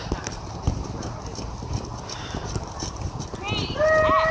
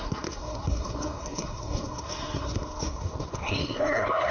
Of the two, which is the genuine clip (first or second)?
first